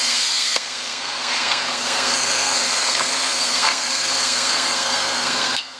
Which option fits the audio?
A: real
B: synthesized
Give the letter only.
B